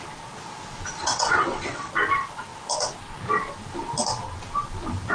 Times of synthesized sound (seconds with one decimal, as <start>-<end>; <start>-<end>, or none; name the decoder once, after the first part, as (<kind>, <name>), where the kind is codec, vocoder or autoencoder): 1.0-1.9 (vocoder, WaveNeXt)